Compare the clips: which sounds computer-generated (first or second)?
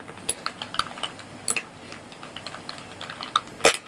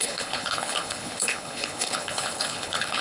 second